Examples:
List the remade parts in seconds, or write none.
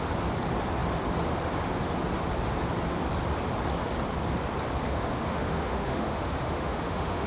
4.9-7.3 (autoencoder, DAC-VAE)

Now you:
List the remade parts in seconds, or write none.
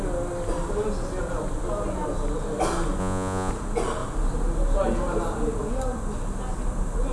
3.0-3.5 (vocoder, Vocos)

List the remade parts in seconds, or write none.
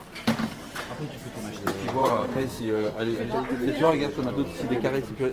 2.0-3.2 (codec, SNAC)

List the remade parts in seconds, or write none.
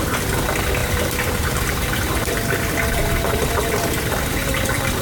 4.4-5.0 (vocoder, BigVGAN v2)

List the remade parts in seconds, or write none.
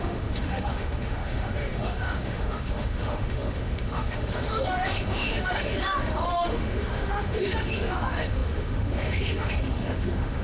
0.0-10.4 (autoencoder, DAC-VAE)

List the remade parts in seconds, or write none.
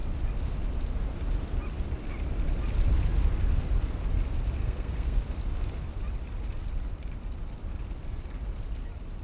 4.6-5.2 (codec, SNAC)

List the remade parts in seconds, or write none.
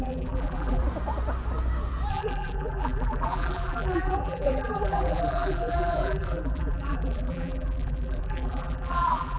0.0-0.8 (vocoder, BigVGAN v2); 2.1-9.4